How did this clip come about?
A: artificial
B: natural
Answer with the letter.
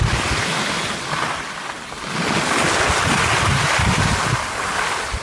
B